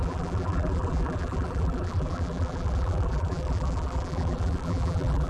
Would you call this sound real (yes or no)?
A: no